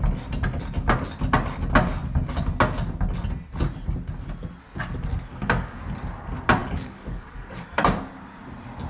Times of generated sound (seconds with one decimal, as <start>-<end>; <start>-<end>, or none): 5.3-5.8; 6.6-7.8

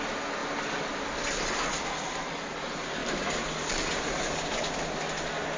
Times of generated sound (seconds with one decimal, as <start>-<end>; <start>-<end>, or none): none

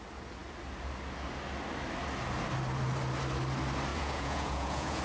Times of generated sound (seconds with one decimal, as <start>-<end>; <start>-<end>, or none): 3.9-5.0

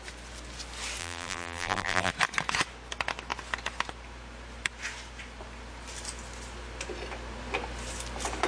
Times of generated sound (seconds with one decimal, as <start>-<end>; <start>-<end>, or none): 1.0-2.1

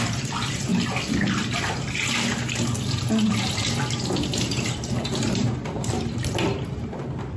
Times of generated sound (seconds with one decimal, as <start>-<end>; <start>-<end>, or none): 0.0-0.7; 4.4-7.4